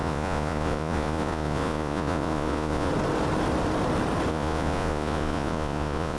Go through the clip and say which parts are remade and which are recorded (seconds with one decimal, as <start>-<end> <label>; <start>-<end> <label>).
0.0-2.9 remade; 2.9-4.3 recorded; 4.3-6.2 remade